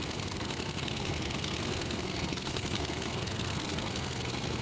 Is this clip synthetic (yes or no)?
yes